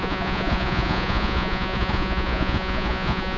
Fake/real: fake